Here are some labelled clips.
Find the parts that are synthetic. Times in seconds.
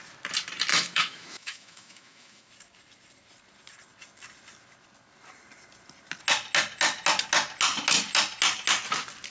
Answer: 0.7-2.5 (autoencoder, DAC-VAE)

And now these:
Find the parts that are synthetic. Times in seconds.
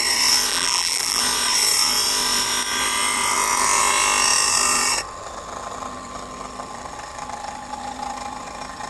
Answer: 0.5-1.2 (vocoder, BigVGAN v2)